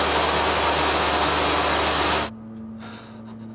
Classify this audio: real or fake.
real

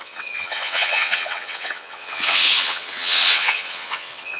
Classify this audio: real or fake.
fake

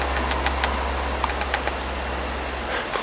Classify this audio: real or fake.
real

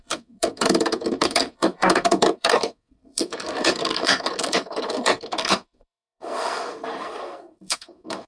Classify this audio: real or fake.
fake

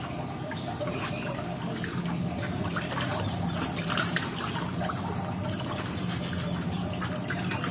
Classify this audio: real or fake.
real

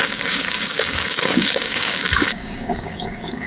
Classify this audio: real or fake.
fake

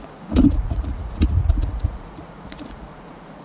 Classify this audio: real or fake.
fake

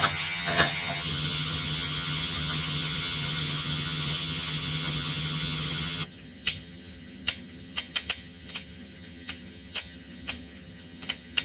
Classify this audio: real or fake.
fake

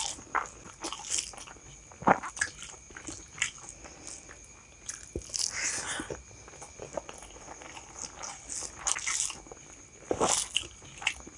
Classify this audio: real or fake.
real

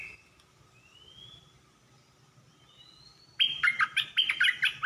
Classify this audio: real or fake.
real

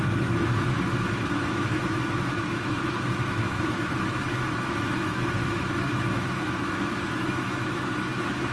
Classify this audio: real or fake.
fake